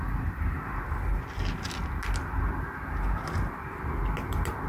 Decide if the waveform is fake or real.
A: real